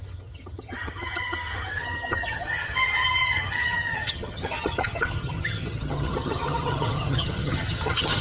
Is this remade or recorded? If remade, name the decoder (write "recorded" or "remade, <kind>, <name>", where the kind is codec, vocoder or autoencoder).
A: remade, vocoder, HiFi-GAN